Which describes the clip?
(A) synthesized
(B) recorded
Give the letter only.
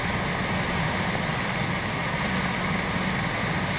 B